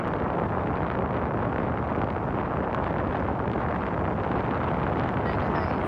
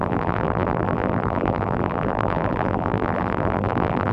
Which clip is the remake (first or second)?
second